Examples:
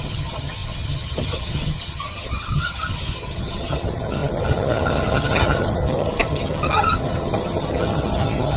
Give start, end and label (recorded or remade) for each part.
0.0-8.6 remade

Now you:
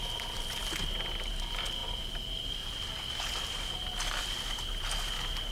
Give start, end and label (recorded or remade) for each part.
0.0-5.5 recorded

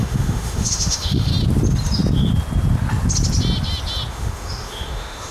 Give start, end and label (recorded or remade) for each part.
0.0-1.3 remade; 1.3-4.1 recorded; 4.1-5.3 remade

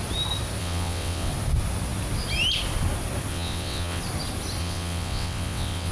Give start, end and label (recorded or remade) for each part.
0.0-0.6 recorded; 0.6-1.3 remade; 1.3-3.3 recorded; 3.3-4.0 remade; 4.0-4.6 recorded; 4.6-5.9 remade

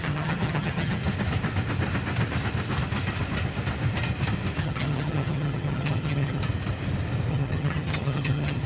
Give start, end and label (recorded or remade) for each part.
0.0-1.0 remade; 1.0-4.6 recorded; 4.6-6.4 remade; 6.4-7.3 recorded; 7.3-8.7 remade